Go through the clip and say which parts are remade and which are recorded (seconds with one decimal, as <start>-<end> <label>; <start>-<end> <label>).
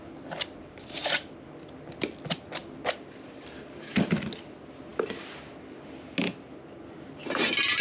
0.0-1.0 recorded; 1.0-1.8 remade; 1.8-2.6 recorded; 2.6-3.9 remade; 3.9-7.8 recorded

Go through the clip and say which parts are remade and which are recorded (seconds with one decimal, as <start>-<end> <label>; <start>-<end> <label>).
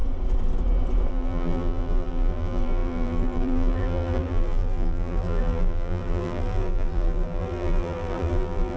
0.0-1.1 recorded; 1.1-8.8 remade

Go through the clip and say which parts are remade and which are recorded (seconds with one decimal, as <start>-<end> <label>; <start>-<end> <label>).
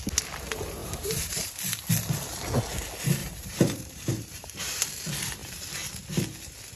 0.0-0.8 recorded; 0.8-1.6 remade; 1.6-3.2 recorded; 3.2-4.9 remade; 4.9-6.8 recorded